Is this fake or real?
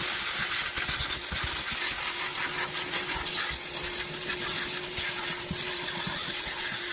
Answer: real